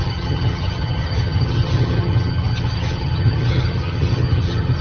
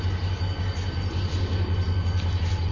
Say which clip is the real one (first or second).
second